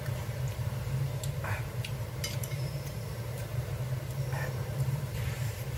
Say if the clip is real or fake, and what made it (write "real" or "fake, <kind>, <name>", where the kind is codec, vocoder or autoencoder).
fake, vocoder, BigVGAN v2